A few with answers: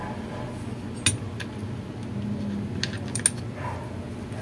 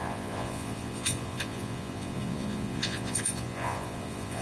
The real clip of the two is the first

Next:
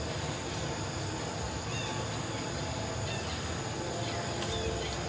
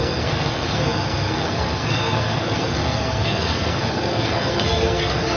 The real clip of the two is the first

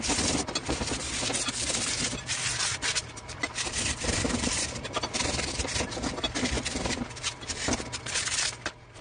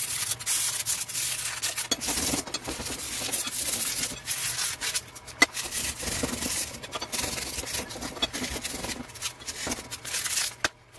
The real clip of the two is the second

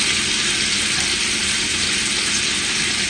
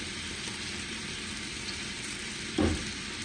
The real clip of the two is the first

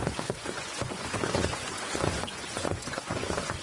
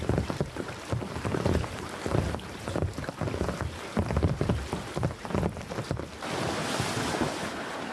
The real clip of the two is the second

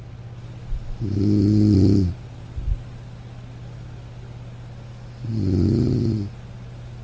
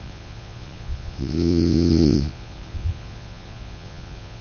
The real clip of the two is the first